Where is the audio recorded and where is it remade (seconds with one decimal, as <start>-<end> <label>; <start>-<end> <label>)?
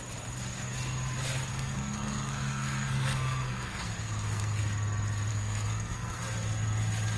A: 0.0-1.5 recorded; 1.5-4.6 remade; 4.6-5.3 recorded; 5.3-6.2 remade; 6.2-7.2 recorded